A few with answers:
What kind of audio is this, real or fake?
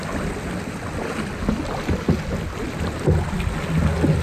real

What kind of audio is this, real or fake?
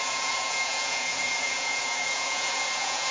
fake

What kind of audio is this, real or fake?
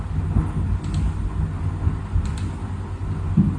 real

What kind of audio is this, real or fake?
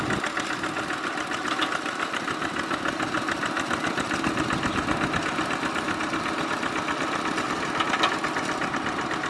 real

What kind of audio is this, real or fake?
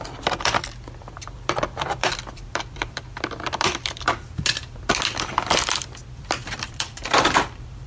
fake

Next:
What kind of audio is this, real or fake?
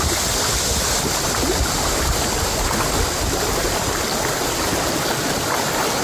real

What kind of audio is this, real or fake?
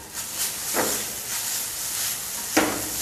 real